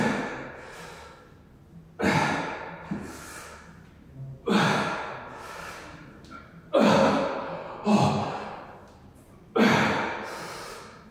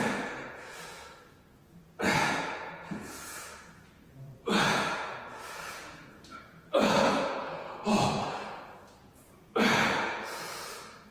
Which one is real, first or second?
first